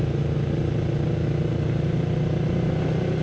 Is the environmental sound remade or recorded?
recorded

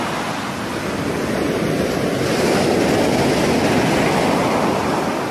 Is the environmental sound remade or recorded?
recorded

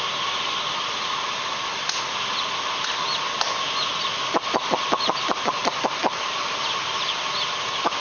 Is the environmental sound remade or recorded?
recorded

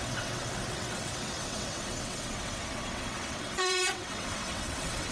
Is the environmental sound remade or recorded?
remade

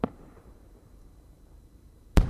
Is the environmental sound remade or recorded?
remade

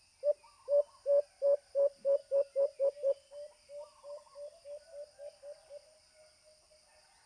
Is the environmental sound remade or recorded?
recorded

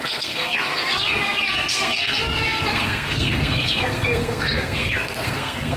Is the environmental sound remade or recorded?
remade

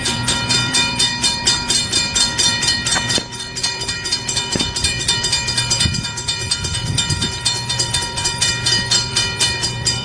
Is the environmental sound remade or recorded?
remade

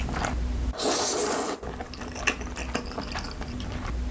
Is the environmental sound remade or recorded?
recorded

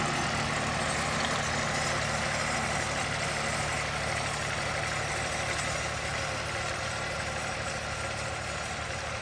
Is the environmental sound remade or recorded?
recorded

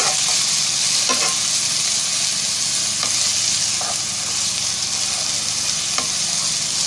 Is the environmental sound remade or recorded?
recorded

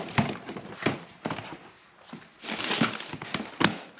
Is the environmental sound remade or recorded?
recorded